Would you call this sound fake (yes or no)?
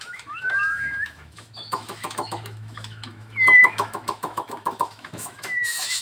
yes